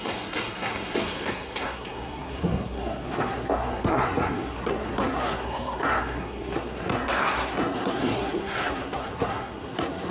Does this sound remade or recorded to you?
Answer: remade